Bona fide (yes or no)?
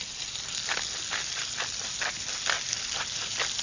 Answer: yes